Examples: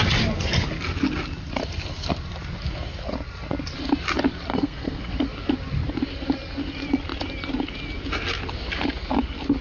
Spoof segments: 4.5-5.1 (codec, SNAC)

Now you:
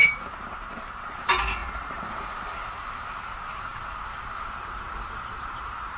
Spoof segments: 0.0-6.0 (vocoder, BigVGAN v2)

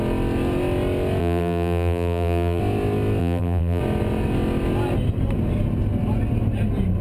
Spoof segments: 1.2-2.6 (vocoder, BigVGAN v2); 3.2-3.8